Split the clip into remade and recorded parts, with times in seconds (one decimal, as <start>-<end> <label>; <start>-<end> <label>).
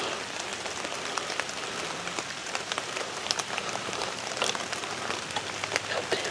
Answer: 0.0-2.4 recorded; 2.4-4.4 remade; 4.4-6.3 recorded